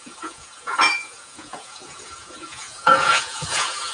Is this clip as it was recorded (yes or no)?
no